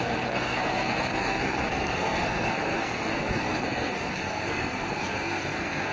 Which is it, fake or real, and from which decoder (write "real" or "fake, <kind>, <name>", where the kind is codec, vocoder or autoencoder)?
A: fake, codec, SNAC